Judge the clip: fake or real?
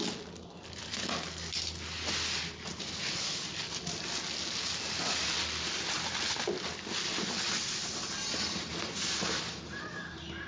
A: real